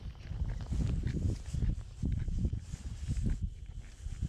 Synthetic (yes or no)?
no